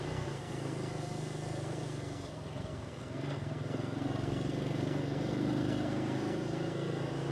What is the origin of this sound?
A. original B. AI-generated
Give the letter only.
B